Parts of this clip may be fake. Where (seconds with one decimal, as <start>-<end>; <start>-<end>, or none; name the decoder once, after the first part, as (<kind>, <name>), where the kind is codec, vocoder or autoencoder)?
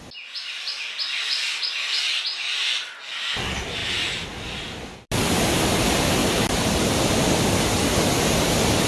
3.8-4.6 (vocoder, BigVGAN v2); 6.2-6.8